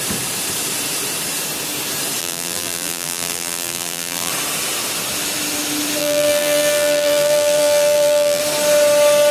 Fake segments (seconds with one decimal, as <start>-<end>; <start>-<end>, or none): 2.2-4.3; 6.0-8.4